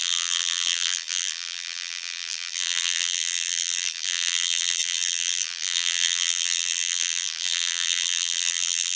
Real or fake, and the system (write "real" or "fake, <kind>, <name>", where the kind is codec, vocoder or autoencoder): fake, vocoder, BigVGAN v2